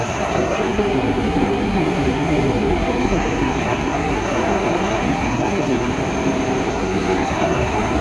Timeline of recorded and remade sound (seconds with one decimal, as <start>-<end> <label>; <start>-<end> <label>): 0.0-5.9 remade; 5.9-6.7 recorded; 6.7-8.0 remade